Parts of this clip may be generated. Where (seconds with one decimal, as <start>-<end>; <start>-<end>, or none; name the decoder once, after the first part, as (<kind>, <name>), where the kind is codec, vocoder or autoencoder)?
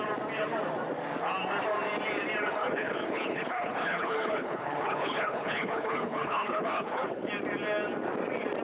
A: 2.6-7.3 (codec, HILCodec)